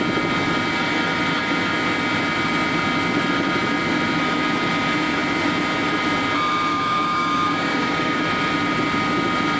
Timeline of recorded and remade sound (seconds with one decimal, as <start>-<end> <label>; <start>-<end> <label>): 0.0-6.7 recorded; 6.7-8.2 remade; 8.2-9.6 recorded